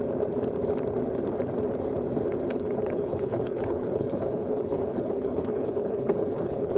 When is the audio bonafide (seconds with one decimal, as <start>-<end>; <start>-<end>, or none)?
0.0-2.5